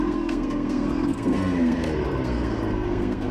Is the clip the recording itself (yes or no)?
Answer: no